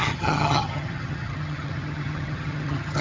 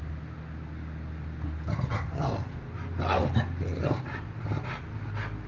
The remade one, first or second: first